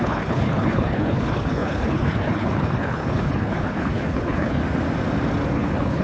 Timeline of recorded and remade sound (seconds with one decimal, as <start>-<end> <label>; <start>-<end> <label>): 0.0-4.6 remade; 4.6-5.5 recorded; 5.5-6.0 remade